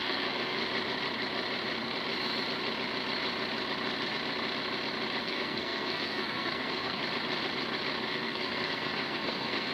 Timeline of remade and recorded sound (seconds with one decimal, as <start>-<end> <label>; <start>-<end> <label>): 0.0-0.6 remade; 0.6-5.2 recorded; 5.2-7.0 remade; 7.0-8.1 recorded; 8.1-9.7 remade